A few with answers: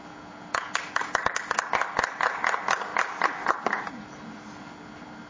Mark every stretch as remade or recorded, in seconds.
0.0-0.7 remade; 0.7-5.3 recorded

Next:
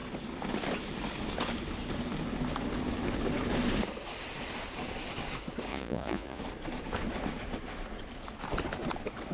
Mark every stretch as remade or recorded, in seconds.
0.0-5.7 recorded; 5.7-6.4 remade; 6.4-9.3 recorded

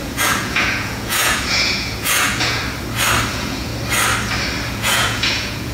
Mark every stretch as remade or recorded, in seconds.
0.0-2.6 remade; 2.6-3.3 recorded; 3.3-3.7 remade; 3.7-4.7 recorded; 4.7-5.7 remade

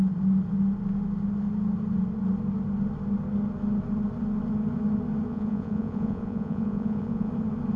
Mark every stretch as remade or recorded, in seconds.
0.0-5.3 recorded; 5.3-7.3 remade; 7.3-7.8 recorded

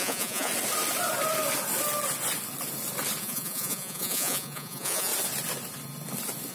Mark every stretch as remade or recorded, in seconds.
0.0-0.5 remade; 0.5-3.2 recorded; 3.2-5.1 remade; 5.1-6.5 recorded

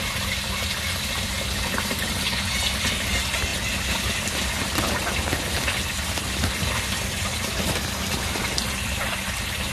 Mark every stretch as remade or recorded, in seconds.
0.0-9.7 recorded

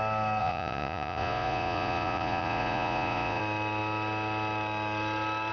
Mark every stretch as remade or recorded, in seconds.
0.0-0.4 recorded; 0.4-3.4 remade; 3.4-5.5 recorded